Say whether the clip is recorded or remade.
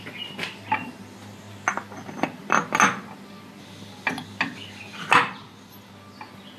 recorded